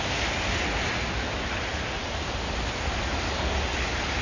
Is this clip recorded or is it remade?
recorded